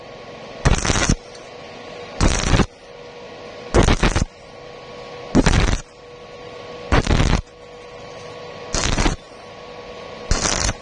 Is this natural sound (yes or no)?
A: yes